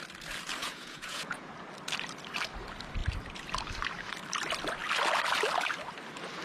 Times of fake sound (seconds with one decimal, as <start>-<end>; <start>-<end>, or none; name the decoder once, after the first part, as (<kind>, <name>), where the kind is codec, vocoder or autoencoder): 0.6-1.5 (vocoder, Vocos)